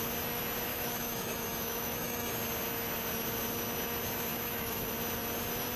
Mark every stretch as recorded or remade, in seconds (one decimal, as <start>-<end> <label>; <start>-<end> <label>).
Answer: 0.0-0.7 recorded; 0.7-2.3 remade; 2.3-4.3 recorded; 4.3-4.9 remade; 4.9-5.8 recorded